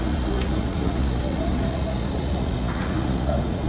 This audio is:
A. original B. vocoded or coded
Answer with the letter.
B